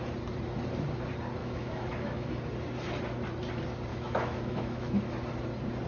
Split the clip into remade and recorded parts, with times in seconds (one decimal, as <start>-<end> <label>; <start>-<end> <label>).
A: 0.0-1.4 recorded; 1.4-2.3 remade; 2.3-3.9 recorded; 3.9-5.1 remade; 5.1-5.9 recorded